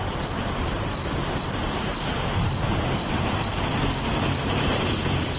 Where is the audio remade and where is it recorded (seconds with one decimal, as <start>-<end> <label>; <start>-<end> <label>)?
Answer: 0.0-1.9 remade; 1.9-3.1 recorded; 3.1-3.5 remade; 3.5-4.4 recorded; 4.4-5.4 remade